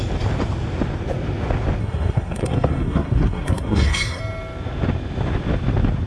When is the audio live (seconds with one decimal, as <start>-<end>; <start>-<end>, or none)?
0.0-1.8; 4.2-6.1